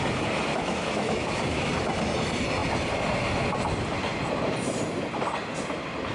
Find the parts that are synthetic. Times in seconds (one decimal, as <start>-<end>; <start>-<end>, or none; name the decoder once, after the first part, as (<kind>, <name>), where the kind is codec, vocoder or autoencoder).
0.5-1.7 (autoencoder, DAC-VAE)

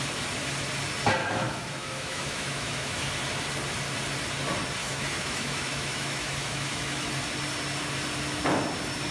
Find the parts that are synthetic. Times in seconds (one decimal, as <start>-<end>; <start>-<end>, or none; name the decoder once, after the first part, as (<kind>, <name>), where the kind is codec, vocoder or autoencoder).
1.2-3.1 (autoencoder, DAC-VAE); 4.8-7.1

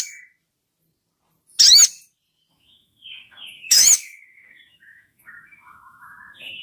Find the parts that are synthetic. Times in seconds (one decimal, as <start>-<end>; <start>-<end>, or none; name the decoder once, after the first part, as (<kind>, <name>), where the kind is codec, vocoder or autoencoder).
2.5-6.6 (autoencoder, DAC-VAE)

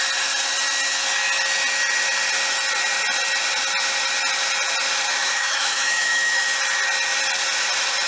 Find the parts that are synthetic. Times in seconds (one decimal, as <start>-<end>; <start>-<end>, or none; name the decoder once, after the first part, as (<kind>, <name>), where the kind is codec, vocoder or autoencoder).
5.2-6.4 (autoencoder, DAC-VAE)

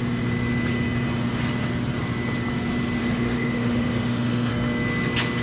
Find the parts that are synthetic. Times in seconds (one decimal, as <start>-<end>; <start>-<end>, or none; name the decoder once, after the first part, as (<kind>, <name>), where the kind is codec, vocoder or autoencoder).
3.0-4.5 (autoencoder, DAC-VAE)

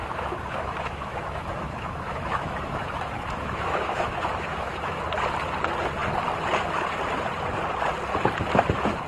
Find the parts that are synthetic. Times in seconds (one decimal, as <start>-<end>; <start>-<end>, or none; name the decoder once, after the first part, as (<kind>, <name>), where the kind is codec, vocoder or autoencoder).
0.0-5.0 (autoencoder, DAC-VAE)

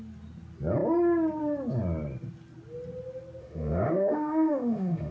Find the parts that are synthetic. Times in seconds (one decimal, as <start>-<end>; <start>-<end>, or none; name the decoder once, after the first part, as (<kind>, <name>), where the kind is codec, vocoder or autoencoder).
3.4-5.1 (autoencoder, DAC-VAE)

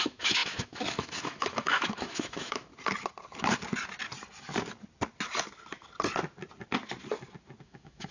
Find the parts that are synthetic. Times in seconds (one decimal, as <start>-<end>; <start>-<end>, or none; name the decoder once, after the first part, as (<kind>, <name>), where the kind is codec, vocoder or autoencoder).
0.0-2.7 (autoencoder, DAC-VAE); 7.6-8.1